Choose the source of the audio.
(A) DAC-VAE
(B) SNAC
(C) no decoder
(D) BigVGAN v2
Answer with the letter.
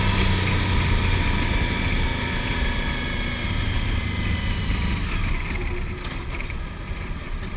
C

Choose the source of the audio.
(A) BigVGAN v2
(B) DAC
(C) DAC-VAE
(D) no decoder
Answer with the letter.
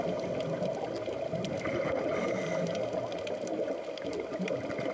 D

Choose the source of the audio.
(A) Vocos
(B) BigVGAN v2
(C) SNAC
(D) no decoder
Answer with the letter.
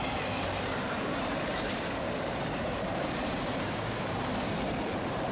B